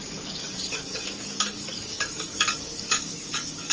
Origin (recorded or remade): remade